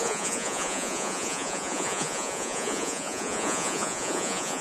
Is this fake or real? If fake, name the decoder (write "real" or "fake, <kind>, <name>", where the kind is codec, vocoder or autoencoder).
fake, vocoder, Vocos